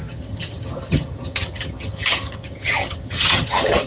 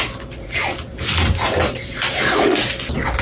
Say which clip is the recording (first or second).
second